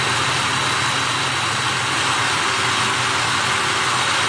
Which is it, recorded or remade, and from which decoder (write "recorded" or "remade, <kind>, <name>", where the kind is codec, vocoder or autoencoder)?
recorded